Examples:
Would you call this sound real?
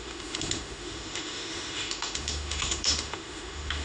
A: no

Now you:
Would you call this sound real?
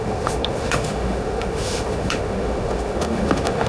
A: no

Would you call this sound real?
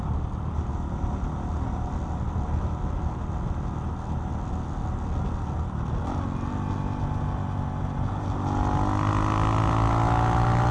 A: yes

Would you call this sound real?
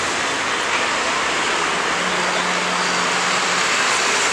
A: yes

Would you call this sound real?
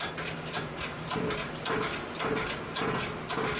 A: yes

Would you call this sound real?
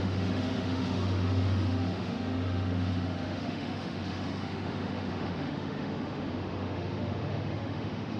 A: no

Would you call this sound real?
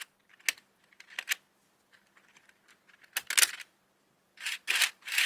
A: yes